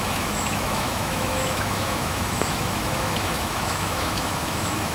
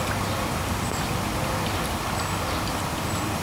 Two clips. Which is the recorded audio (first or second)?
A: second